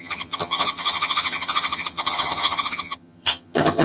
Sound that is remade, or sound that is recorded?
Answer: remade